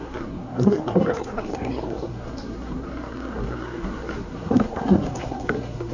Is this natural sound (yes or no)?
no